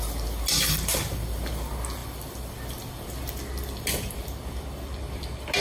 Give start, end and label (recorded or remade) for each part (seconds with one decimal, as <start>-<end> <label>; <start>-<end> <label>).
0.0-5.6 recorded